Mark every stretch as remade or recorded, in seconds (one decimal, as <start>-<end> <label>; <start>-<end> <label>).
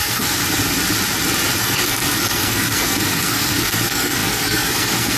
0.0-0.4 remade; 0.4-1.6 recorded; 1.6-5.2 remade